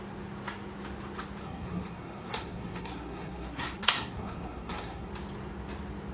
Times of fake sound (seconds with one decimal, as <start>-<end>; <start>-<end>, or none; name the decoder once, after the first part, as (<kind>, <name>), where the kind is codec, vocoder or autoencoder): 1.4-5.1 (codec, SNAC)

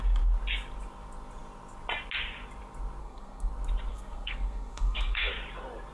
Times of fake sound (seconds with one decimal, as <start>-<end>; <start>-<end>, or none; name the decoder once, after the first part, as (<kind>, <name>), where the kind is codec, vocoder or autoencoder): 3.0-3.5 (codec, SNAC); 3.9-5.3

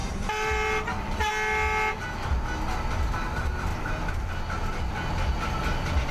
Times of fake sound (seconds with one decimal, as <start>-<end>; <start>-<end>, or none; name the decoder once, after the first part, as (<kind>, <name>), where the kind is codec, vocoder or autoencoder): 0.0-1.3 (vocoder, BigVGAN v2)

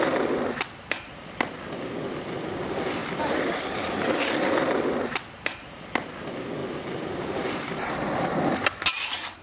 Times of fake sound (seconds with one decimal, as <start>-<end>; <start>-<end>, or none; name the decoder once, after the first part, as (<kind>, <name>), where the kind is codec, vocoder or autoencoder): 3.0-4.3 (vocoder, BigVGAN v2); 6.6-7.9

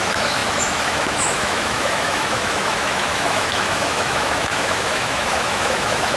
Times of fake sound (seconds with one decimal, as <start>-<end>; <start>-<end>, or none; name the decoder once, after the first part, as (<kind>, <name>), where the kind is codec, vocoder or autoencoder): 0.0-6.2 (autoencoder, DAC-VAE)

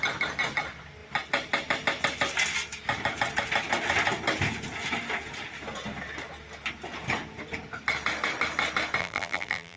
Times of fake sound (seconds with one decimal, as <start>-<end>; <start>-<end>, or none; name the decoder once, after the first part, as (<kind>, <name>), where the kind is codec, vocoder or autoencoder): 9.0-9.8 (vocoder, BigVGAN v2)

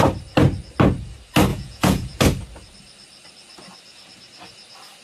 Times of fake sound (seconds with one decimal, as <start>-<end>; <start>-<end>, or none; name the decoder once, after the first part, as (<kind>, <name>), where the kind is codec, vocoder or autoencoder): 1.5-2.2 (vocoder, Vocos)

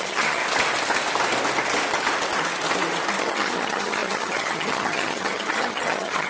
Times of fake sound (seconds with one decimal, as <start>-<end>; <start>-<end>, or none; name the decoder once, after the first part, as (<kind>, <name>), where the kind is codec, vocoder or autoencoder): 0.0-0.4 (vocoder, HiFi-GAN); 3.2-6.3